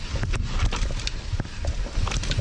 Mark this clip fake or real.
real